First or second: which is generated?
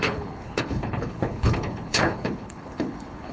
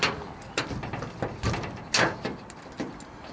first